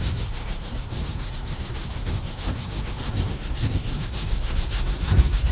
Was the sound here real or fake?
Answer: fake